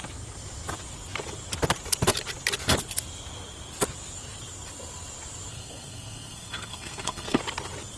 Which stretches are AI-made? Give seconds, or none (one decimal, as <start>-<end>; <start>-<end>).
5.5-7.4